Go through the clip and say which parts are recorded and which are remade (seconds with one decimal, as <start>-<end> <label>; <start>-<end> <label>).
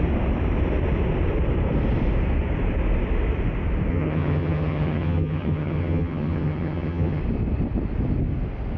0.0-3.9 recorded; 3.9-7.2 remade; 7.2-8.8 recorded